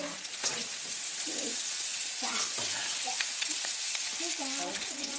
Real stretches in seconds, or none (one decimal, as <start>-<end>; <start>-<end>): 4.1-4.7